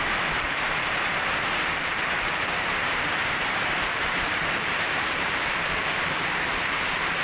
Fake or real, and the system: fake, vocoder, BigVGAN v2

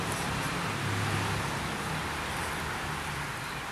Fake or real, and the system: real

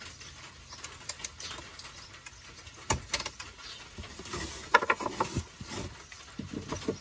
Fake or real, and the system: real